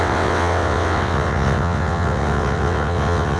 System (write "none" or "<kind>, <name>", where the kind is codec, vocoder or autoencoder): vocoder, WaveNeXt